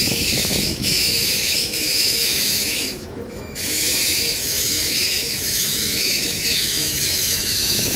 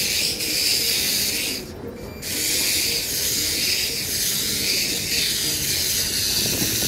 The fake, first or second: first